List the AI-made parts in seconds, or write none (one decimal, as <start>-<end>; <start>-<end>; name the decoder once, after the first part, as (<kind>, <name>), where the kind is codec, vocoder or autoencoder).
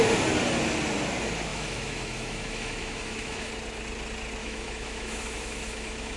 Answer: 1.5-3.5 (autoencoder, DAC-VAE); 4.4-6.2